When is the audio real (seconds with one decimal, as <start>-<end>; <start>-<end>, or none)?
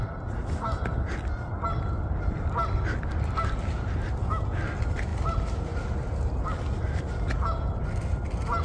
0.0-8.6